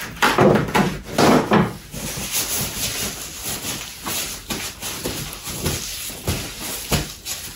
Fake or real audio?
real